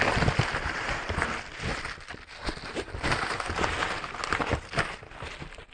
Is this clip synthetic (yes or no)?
no